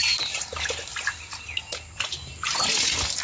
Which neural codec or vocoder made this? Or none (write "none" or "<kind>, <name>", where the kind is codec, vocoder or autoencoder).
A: none